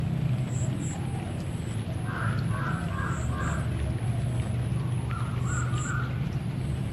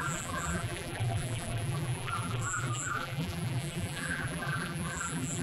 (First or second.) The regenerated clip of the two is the second